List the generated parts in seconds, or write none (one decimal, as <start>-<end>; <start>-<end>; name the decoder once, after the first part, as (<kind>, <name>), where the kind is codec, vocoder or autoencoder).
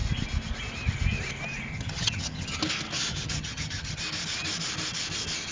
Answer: 1.7-2.6 (vocoder, HiFi-GAN); 3.1-4.0